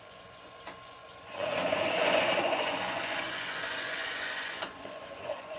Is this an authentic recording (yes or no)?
no